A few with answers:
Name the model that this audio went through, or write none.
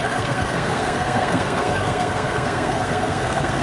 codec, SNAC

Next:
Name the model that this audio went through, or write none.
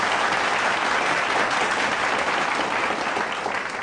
none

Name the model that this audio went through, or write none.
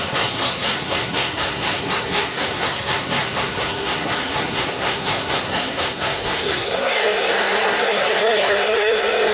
codec, SNAC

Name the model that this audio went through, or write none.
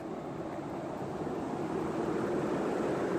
none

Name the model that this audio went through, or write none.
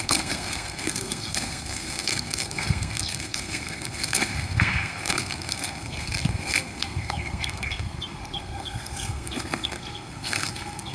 codec, SNAC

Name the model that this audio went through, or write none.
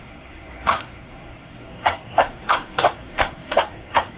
codec, SNAC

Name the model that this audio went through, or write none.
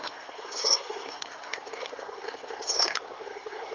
codec, SNAC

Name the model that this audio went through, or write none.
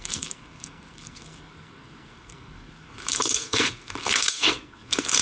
codec, SNAC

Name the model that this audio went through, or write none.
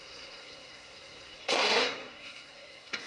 codec, SNAC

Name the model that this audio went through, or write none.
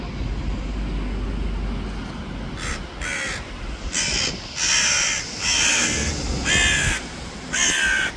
none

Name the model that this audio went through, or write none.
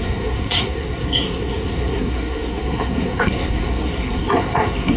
codec, SNAC